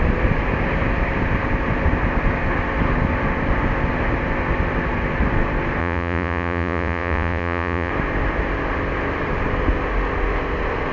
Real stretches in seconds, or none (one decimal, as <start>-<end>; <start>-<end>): 0.0-5.8; 7.9-10.9